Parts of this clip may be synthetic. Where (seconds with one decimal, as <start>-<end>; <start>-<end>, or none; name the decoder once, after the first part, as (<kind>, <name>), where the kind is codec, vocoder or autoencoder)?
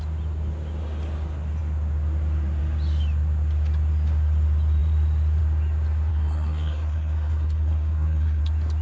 6.1-8.4 (codec, SNAC)